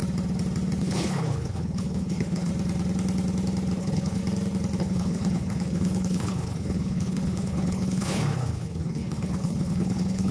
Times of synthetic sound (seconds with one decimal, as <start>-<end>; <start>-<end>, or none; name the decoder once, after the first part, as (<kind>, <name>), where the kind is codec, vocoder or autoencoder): 0.8-2.5 (codec, HILCodec); 3.8-4.2; 4.8-10.3